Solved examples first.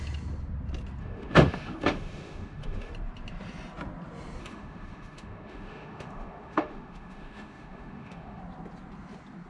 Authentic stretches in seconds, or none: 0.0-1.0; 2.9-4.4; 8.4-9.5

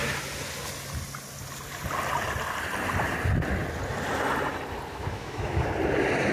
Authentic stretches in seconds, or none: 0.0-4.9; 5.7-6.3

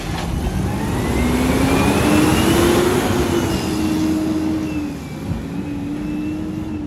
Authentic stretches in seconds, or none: 0.0-6.9

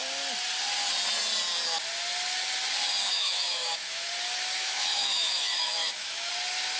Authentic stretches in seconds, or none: 0.0-3.1; 4.1-4.6; 6.3-6.8

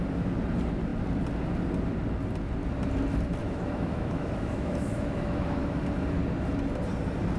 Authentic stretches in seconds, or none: 0.0-3.4; 5.8-7.4